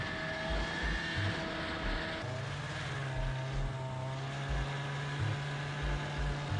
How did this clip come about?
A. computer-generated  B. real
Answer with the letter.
B